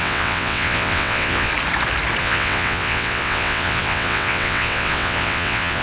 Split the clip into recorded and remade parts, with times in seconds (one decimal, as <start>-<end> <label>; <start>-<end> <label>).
0.0-1.5 remade; 1.5-2.2 recorded; 2.2-5.8 remade